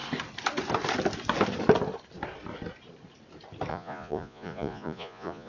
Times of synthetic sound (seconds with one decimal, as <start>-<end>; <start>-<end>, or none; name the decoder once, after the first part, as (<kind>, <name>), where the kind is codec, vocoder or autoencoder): 3.7-5.5 (vocoder, Vocos)

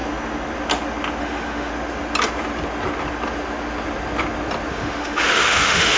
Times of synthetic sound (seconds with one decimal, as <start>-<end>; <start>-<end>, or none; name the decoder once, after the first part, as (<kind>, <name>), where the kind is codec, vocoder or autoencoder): 1.2-1.7 (autoencoder, DAC-VAE); 4.7-6.0

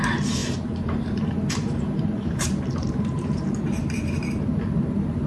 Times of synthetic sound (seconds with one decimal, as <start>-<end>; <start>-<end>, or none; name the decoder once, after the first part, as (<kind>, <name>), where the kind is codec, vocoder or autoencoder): 0.4-3.6 (vocoder, BigVGAN v2)

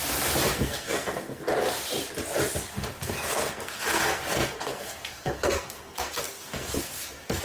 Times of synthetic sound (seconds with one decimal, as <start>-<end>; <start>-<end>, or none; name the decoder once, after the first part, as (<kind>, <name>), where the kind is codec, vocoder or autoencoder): 0.5-1.4 (codec, SNAC); 2.7-7.4

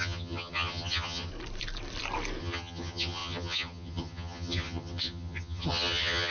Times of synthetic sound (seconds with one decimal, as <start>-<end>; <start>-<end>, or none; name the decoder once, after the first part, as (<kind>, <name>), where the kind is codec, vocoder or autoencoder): 0.0-1.3 (vocoder, HiFi-GAN); 2.4-6.3

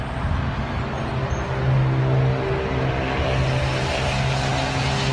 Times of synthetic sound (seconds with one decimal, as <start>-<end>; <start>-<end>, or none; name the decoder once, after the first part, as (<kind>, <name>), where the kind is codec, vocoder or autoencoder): none

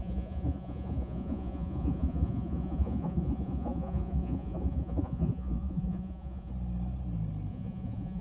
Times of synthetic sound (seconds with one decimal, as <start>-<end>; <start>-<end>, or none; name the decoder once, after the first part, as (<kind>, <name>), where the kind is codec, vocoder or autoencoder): 0.0-6.5 (vocoder, Vocos); 7.5-8.2